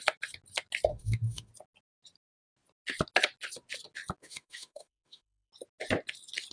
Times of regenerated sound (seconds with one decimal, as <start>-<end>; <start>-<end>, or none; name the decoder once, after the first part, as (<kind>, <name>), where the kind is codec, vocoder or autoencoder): 0.9-1.5 (autoencoder, DAC-VAE); 4.2-5.5